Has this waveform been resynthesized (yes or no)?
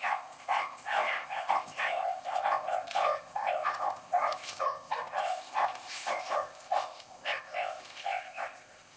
yes